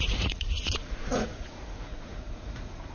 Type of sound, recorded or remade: remade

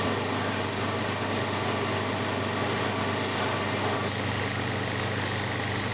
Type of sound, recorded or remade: recorded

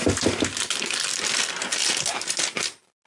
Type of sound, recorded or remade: recorded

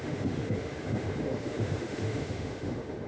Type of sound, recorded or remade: remade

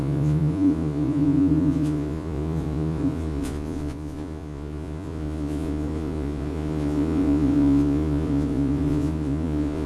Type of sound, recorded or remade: remade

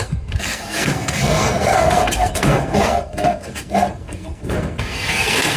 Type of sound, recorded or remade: remade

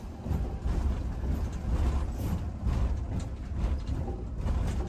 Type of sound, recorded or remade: recorded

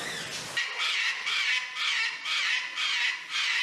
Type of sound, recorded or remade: recorded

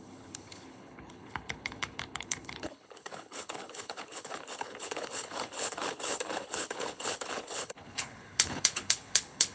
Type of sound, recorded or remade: remade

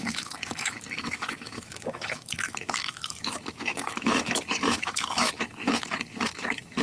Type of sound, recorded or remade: remade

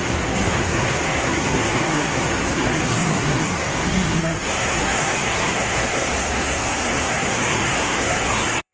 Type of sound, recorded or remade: remade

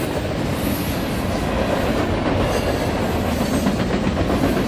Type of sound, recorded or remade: recorded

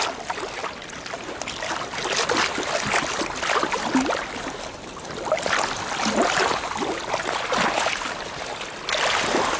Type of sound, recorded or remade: recorded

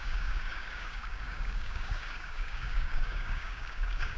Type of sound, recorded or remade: remade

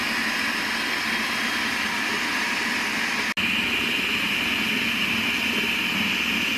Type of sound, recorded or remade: recorded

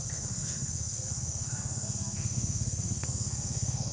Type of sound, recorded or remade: remade